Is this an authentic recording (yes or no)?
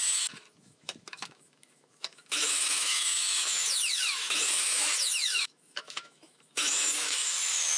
no